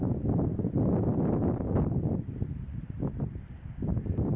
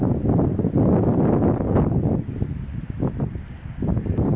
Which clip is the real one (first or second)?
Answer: second